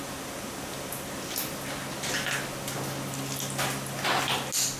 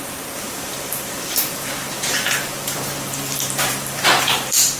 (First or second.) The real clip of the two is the first